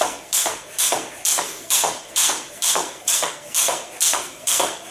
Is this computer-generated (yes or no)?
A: yes